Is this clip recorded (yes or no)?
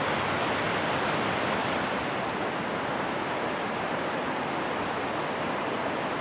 yes